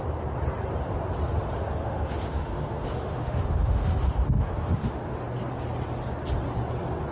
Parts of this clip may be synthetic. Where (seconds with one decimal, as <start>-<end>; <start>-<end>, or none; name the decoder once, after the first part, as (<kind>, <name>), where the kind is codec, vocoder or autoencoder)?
1.8-5.2 (autoencoder, DAC-VAE)